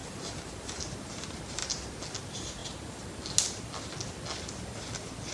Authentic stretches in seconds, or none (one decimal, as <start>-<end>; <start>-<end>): 0.8-5.3